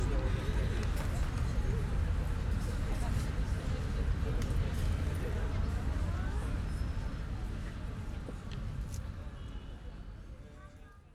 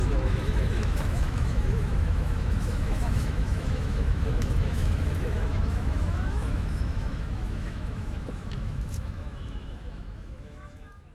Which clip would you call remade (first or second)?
second